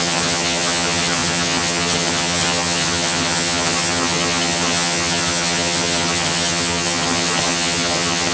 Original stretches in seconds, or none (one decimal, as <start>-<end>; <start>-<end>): none